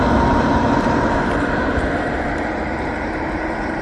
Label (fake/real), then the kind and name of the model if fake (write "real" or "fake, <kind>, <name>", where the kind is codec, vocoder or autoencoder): fake, vocoder, BigVGAN v2